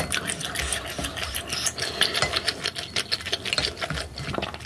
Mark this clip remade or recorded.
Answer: recorded